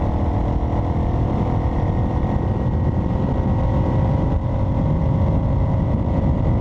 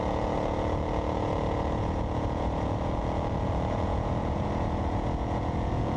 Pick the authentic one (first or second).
first